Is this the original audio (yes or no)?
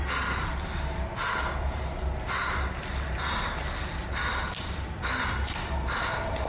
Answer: yes